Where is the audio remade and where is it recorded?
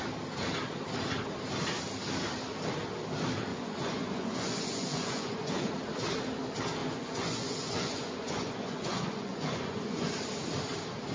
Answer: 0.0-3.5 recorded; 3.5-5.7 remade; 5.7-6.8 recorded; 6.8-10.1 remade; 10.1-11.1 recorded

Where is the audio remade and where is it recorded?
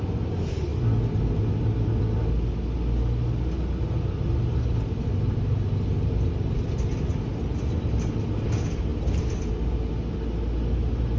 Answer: 0.0-11.2 recorded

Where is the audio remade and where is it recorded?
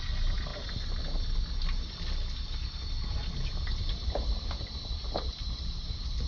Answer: 0.0-6.3 recorded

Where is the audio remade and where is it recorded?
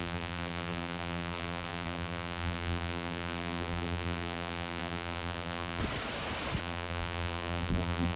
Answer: 0.0-5.8 remade; 5.8-6.6 recorded; 6.6-8.2 remade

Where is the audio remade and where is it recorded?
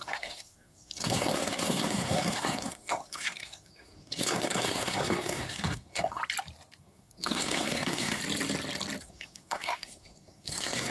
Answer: 0.0-6.2 remade; 6.2-6.8 recorded; 6.8-8.2 remade; 8.2-9.0 recorded; 9.0-10.9 remade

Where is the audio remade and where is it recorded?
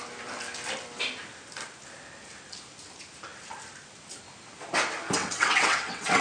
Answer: 0.0-5.2 recorded; 5.2-6.2 remade